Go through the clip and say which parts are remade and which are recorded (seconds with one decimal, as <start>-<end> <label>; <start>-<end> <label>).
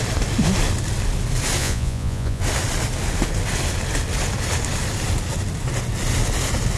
0.0-1.6 recorded; 1.6-2.4 remade; 2.4-6.8 recorded